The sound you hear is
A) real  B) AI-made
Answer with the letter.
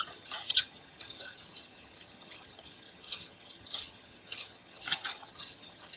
B